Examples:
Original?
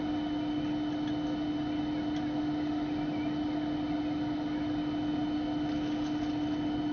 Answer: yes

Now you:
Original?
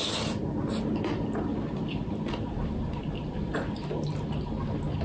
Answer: yes